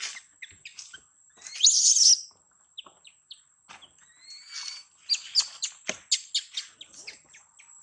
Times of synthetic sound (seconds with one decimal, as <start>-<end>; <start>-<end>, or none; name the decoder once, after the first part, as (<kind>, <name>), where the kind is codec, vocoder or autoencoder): none